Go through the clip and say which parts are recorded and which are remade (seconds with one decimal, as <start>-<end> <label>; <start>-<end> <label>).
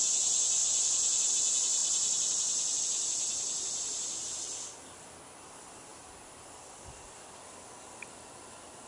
0.0-5.9 recorded; 5.9-7.2 remade; 7.2-8.9 recorded